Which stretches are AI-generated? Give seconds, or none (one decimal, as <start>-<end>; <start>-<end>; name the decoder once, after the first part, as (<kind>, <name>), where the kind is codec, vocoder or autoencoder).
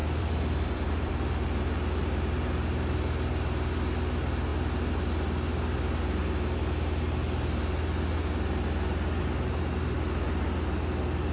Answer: 0.0-1.1 (vocoder, BigVGAN v2)